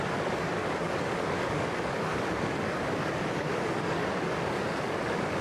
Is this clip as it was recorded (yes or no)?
no